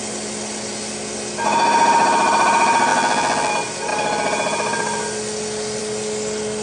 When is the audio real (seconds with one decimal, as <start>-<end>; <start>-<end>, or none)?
0.0-2.9; 3.5-6.6